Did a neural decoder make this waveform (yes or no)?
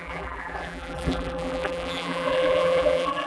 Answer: yes